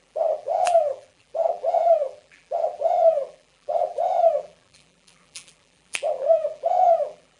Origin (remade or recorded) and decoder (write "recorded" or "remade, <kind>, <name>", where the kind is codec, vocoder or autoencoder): remade, vocoder, BigVGAN v2